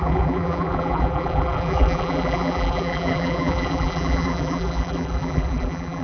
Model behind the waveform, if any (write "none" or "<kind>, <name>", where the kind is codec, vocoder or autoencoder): vocoder, BigVGAN v2